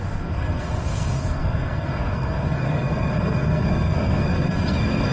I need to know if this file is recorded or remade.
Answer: remade